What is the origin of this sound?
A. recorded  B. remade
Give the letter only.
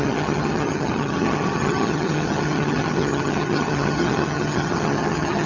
B